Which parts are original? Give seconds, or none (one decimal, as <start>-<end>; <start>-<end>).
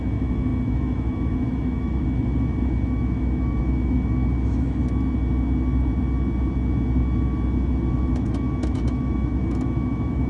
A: 4.8-7.9